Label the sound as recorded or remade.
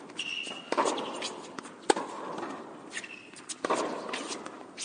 recorded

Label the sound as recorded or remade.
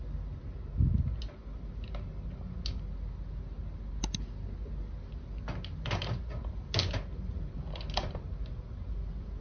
recorded